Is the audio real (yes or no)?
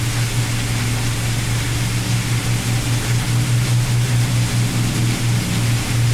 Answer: yes